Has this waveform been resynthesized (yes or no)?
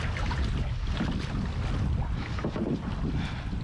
no